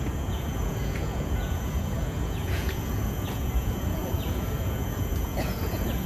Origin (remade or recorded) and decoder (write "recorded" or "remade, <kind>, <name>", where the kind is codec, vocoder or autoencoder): remade, vocoder, Vocos